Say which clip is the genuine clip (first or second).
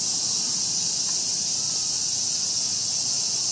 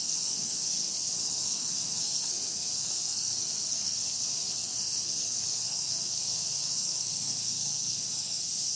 first